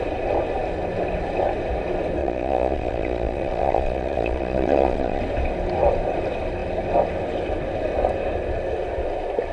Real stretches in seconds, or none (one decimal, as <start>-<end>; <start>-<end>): 0.0-2.2; 5.2-9.5